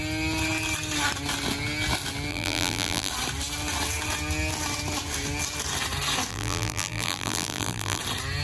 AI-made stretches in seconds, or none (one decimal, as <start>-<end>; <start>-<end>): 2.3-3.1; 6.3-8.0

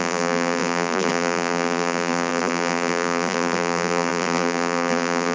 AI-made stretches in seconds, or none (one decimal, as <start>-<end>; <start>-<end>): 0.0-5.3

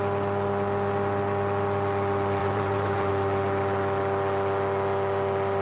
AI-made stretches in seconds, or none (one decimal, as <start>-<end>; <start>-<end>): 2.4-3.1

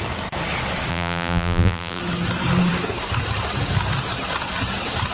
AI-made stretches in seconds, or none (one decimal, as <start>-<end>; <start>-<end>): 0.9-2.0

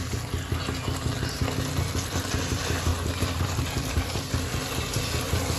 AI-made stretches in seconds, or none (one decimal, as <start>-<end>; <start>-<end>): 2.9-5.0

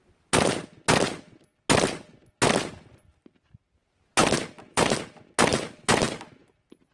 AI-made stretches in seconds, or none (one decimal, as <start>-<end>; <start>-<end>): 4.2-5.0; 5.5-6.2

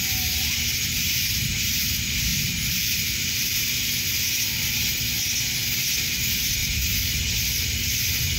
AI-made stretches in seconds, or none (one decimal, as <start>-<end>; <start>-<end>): 2.3-4.0

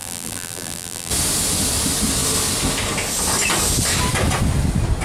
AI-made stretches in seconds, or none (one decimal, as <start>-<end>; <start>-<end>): 0.0-1.1